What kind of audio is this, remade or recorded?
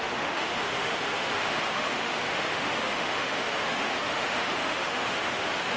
remade